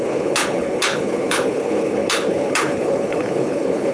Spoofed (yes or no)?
yes